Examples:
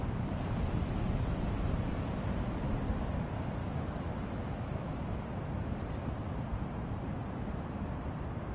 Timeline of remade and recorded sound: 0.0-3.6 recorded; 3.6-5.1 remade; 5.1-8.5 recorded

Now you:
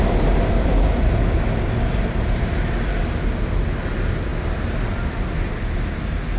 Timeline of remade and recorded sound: 0.0-6.4 recorded

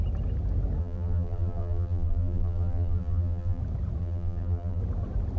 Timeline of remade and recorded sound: 0.0-0.8 recorded; 0.8-3.6 remade; 3.6-4.0 recorded; 4.0-4.8 remade; 4.8-5.4 recorded

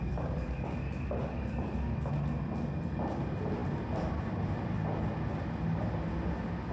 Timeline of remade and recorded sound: 0.0-2.1 remade; 2.1-6.7 recorded

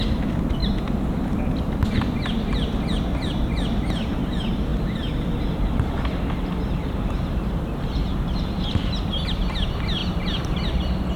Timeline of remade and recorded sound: 0.0-4.7 recorded; 4.7-8.6 remade; 8.6-10.0 recorded; 10.0-10.7 remade; 10.7-11.2 recorded

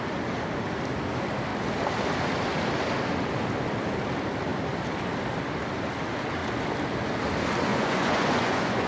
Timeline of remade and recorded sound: 0.0-7.7 recorded; 7.7-8.9 remade

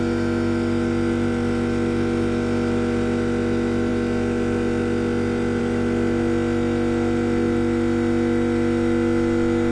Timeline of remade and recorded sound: 0.0-9.7 recorded

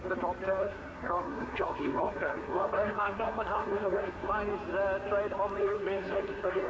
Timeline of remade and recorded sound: 0.0-0.6 recorded; 0.6-4.3 remade; 4.3-5.6 recorded; 5.6-6.7 remade